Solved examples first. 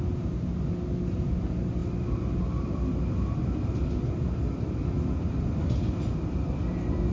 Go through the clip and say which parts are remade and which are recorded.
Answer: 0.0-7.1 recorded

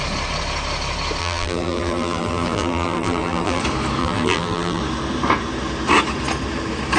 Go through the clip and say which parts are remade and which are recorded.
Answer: 0.0-1.2 recorded; 1.2-3.6 remade; 3.6-4.0 recorded; 4.0-4.8 remade; 4.8-7.0 recorded

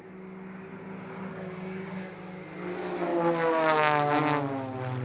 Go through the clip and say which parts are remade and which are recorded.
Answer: 0.0-1.3 recorded; 1.3-2.1 remade; 2.1-5.0 recorded

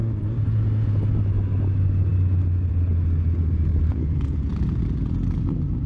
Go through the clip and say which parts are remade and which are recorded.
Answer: 0.0-3.9 recorded; 3.9-4.5 remade; 4.5-5.9 recorded

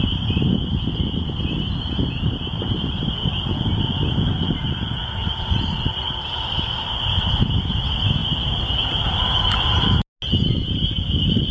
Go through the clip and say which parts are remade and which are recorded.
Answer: 0.0-11.5 recorded

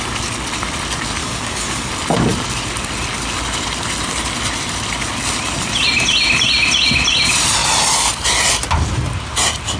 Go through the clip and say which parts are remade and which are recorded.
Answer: 0.0-1.2 recorded; 1.2-1.9 remade; 1.9-9.8 recorded